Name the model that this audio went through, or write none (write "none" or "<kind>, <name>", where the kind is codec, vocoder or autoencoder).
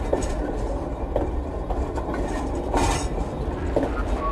none